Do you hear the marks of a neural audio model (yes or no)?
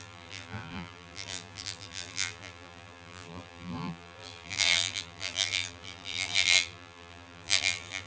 yes